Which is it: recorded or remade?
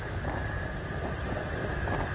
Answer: recorded